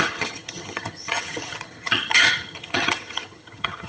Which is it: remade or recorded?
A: remade